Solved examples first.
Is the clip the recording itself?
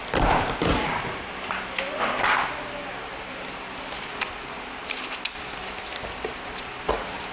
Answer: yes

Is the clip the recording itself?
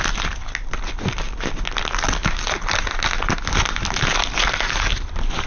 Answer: yes